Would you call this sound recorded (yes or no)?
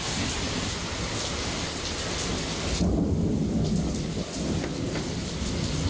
yes